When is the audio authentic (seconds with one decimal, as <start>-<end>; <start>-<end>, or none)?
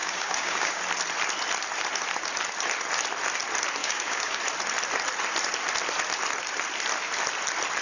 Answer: 0.8-3.8; 4.4-7.8